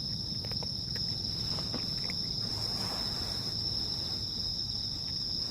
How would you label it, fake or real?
real